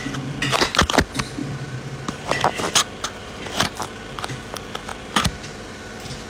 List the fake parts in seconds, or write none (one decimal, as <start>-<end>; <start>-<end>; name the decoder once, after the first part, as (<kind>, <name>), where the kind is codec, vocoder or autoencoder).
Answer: 1.4-2.7 (vocoder, BigVGAN v2); 3.2-3.9; 4.9-5.8